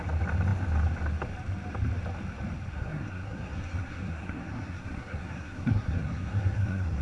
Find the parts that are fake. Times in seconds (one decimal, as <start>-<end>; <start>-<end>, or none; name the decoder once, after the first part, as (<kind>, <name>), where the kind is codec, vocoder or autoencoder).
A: 2.7-7.0 (codec, SNAC)